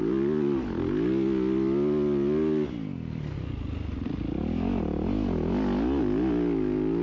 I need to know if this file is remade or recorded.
recorded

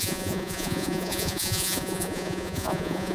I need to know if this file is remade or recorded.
remade